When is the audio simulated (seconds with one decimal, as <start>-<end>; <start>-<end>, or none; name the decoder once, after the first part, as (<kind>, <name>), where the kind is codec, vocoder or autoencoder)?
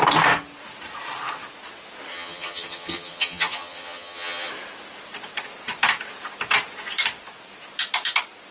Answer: 2.1-4.5 (vocoder, HiFi-GAN)